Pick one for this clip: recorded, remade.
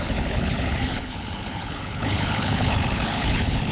remade